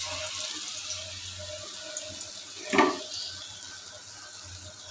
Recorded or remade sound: recorded